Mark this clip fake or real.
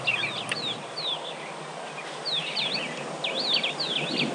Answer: real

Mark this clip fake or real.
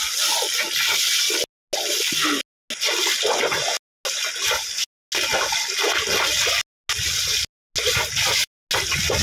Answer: real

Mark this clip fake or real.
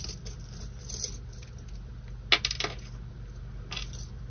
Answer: real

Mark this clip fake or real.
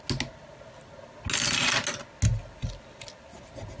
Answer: real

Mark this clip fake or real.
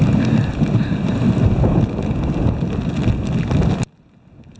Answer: real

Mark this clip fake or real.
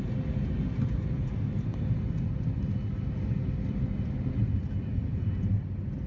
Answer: real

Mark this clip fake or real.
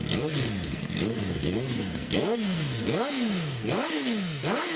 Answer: fake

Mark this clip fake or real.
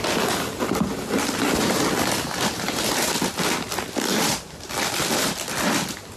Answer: real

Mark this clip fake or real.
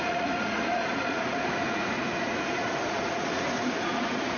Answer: fake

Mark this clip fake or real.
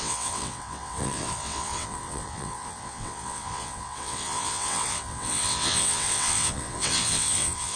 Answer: fake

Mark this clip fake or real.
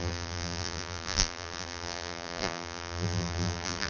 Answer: fake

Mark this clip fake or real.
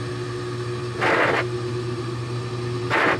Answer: real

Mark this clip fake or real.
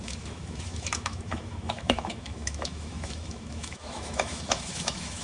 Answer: fake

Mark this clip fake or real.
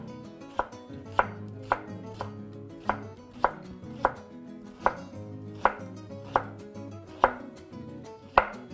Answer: real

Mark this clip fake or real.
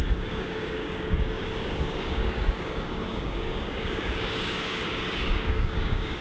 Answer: fake